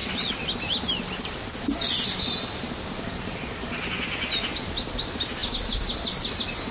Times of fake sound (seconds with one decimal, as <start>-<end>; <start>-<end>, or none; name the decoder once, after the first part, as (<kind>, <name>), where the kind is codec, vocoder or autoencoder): 0.0-0.5 (vocoder, WaveNeXt)